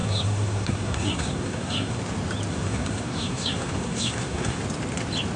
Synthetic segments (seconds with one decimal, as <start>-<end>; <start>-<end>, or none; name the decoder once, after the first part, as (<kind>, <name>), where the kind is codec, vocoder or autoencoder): 0.0-2.0 (codec, SNAC); 2.5-4.6